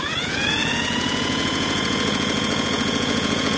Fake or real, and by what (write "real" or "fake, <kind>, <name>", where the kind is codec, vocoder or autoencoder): fake, vocoder, Vocos